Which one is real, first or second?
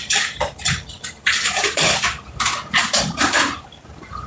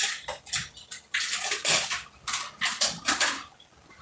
second